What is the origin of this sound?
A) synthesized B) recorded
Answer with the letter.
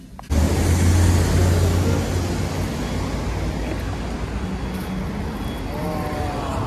B